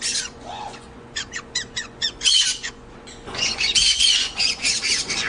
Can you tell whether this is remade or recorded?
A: remade